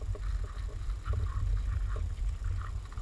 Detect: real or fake real